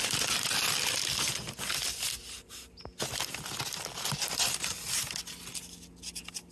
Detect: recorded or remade recorded